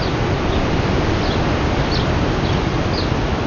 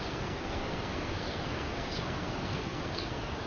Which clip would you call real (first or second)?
first